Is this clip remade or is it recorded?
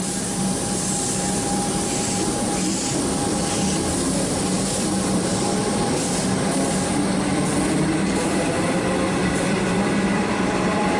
remade